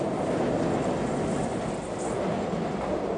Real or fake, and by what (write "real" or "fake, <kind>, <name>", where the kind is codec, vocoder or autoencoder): real